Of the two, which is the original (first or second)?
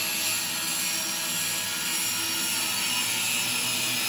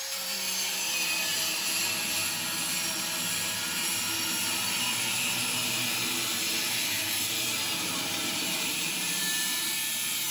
first